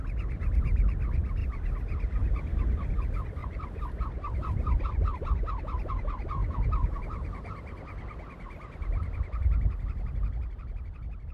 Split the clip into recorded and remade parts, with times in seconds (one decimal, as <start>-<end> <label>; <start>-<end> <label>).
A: 0.0-1.4 recorded; 1.4-2.9 remade; 2.9-3.4 recorded; 3.4-5.9 remade; 5.9-6.4 recorded; 6.4-7.0 remade; 7.0-11.3 recorded